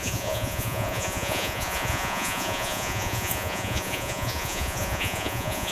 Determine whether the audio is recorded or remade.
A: remade